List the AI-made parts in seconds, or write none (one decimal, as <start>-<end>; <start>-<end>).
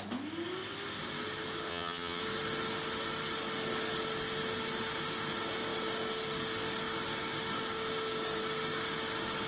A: 1.7-2.2